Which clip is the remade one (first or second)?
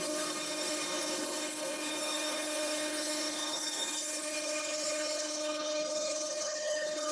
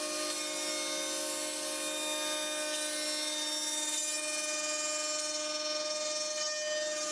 first